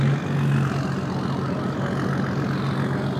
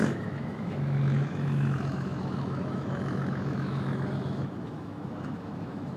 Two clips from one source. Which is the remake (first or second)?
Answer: second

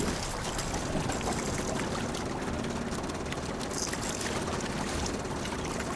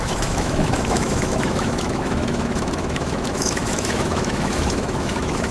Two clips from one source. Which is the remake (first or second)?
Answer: second